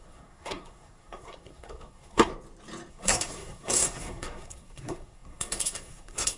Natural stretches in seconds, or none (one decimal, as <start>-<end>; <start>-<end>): 2.3-2.9